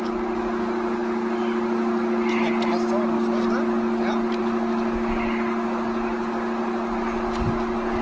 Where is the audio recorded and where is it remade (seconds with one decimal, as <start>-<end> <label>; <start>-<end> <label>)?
0.0-8.0 recorded